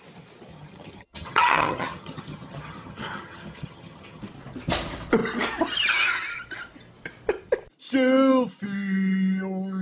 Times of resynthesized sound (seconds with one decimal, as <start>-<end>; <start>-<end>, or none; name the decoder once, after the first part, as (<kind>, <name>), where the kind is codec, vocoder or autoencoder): 0.5-4.2 (vocoder, HiFi-GAN)